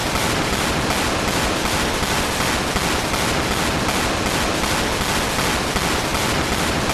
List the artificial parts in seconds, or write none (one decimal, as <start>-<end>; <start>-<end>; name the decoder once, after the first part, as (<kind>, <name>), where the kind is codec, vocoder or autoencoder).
0.0-2.5 (vocoder, BigVGAN v2); 6.1-6.9